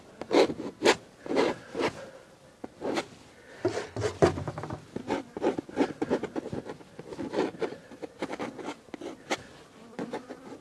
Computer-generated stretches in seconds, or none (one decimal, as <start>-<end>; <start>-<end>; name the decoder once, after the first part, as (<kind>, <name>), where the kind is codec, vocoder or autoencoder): none